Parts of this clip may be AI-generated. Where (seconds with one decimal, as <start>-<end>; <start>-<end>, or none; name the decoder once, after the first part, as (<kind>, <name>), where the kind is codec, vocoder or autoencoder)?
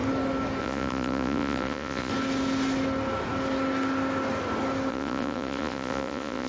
0.6-2.1 (vocoder, Vocos); 4.9-6.5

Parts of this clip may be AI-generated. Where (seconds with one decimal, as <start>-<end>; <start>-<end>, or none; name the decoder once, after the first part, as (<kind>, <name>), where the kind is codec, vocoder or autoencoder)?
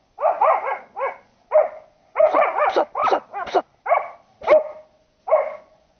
0.0-3.0 (vocoder, Vocos); 5.0-6.0